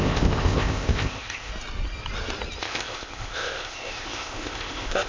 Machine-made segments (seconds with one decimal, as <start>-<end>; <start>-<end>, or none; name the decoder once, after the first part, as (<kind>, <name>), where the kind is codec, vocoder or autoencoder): 0.0-1.5 (codec, ZipCodec); 2.6-5.1